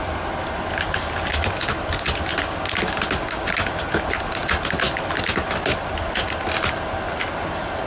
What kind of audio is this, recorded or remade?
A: recorded